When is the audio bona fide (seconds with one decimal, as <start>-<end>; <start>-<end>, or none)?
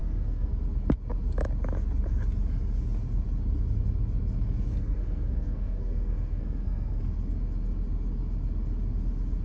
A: 0.5-4.7; 7.0-9.4